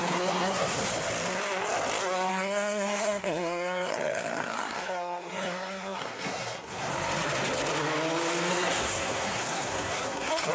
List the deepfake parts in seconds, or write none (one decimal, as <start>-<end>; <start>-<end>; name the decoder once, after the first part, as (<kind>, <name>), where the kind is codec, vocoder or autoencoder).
0.0-0.8 (codec, SNAC); 2.3-6.9; 8.5-10.5